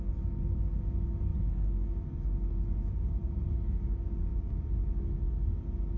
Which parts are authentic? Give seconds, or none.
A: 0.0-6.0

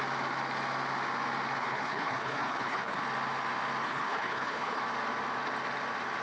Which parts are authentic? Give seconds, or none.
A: 0.0-1.6; 3.0-3.8; 4.8-6.2

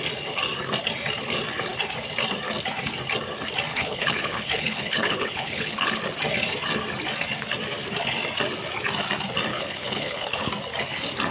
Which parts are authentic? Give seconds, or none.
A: 0.0-3.7; 6.0-9.5; 10.5-11.3

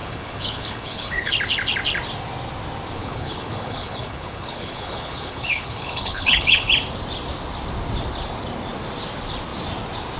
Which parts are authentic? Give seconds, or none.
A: 1.3-3.0; 6.7-10.2